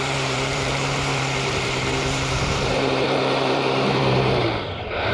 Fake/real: fake